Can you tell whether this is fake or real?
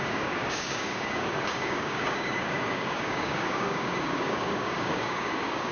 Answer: fake